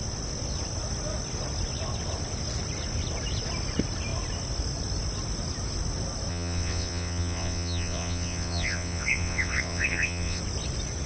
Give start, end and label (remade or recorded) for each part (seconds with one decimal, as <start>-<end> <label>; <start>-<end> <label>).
0.0-6.3 recorded; 6.3-10.4 remade; 10.4-11.1 recorded